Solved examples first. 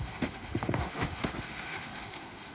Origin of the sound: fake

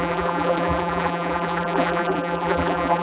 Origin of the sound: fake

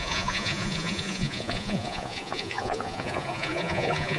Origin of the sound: fake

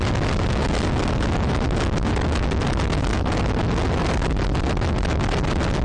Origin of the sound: real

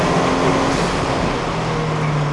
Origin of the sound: real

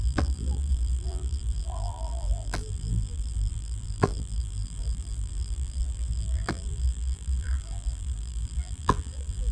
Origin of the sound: fake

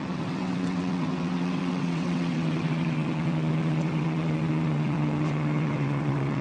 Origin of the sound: fake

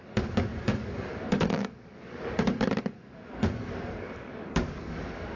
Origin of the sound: fake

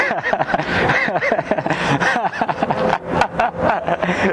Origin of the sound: real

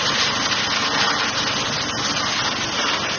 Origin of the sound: real